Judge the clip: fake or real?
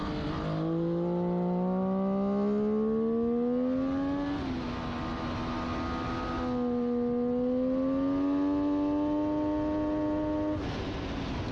real